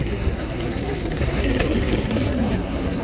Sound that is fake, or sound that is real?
fake